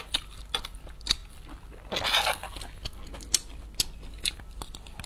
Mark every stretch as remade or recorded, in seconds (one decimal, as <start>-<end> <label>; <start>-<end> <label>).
0.0-5.1 recorded